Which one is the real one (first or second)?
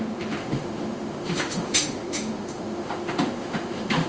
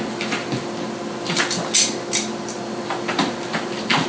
second